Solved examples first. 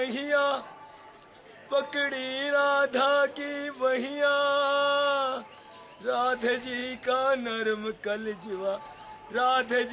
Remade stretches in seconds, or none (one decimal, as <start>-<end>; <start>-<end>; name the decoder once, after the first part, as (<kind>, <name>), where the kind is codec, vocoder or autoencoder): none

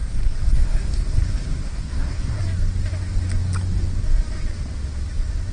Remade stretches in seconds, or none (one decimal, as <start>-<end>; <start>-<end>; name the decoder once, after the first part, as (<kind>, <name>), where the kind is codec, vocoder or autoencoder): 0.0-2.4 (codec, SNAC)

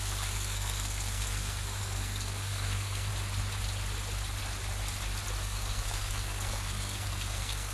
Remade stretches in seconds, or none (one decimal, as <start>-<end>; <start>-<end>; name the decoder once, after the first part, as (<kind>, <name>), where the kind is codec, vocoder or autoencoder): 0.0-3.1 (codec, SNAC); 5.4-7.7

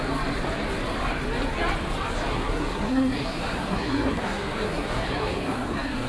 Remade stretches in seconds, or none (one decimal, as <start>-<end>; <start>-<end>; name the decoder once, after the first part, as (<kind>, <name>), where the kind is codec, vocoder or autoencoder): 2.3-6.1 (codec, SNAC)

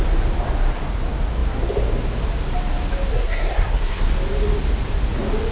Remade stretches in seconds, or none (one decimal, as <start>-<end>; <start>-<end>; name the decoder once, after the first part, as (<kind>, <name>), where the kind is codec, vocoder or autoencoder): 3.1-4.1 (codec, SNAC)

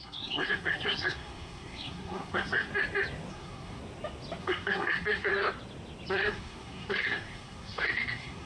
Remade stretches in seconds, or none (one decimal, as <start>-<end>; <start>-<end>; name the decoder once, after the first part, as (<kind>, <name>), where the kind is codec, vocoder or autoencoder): 0.0-2.7 (codec, SNAC); 3.3-3.8; 4.4-5.3; 6.1-8.5